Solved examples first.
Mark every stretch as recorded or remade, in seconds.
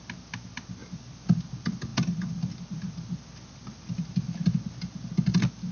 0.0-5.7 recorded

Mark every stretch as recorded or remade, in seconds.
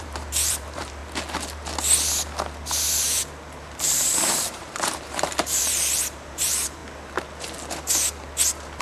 0.0-1.0 remade; 1.0-3.8 recorded; 3.8-6.8 remade; 6.8-8.8 recorded